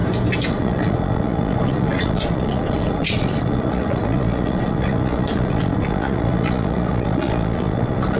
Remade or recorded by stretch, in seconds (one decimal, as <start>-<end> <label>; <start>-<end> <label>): 0.0-0.5 recorded; 0.5-8.2 remade